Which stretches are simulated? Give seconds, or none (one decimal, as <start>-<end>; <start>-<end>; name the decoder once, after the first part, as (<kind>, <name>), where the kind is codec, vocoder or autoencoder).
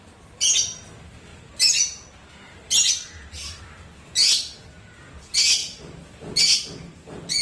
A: none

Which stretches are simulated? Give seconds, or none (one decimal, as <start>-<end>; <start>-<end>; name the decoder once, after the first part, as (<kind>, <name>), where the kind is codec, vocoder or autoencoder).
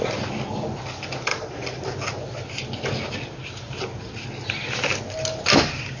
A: 1.3-1.8 (vocoder, Vocos)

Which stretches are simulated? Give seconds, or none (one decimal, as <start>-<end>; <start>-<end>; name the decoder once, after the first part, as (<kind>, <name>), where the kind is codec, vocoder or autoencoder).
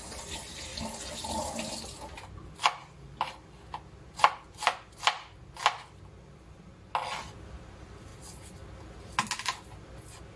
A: 0.7-1.5 (vocoder, BigVGAN v2); 2.8-5.0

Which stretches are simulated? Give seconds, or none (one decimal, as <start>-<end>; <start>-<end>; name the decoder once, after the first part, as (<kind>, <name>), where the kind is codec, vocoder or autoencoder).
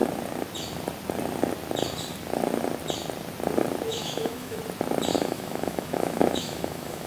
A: 3.9-4.6 (autoencoder, DAC-VAE); 5.1-7.1